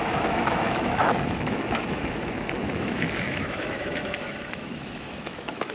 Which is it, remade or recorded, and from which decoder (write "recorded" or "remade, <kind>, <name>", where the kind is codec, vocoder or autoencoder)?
remade, autoencoder, DAC-VAE